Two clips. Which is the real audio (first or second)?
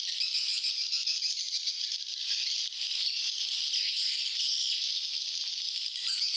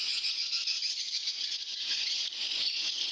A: first